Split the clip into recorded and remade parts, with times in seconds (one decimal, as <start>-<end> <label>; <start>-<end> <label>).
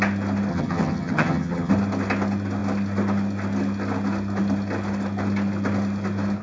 0.0-0.5 recorded; 0.5-1.7 remade; 1.7-6.4 recorded